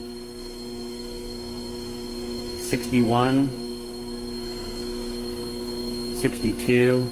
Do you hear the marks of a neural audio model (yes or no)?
yes